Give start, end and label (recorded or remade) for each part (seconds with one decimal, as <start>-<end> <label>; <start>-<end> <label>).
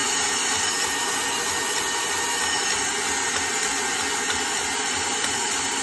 0.0-5.8 recorded